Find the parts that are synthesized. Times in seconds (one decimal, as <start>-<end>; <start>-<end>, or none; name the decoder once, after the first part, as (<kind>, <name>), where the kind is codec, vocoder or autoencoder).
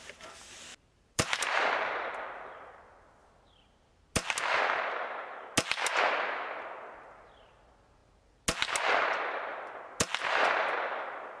0.7-2.8 (vocoder, BigVGAN v2)